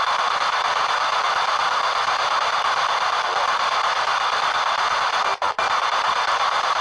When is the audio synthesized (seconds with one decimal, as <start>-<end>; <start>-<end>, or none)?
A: none